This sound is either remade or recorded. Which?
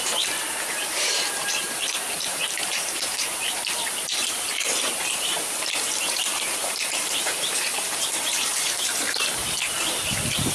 remade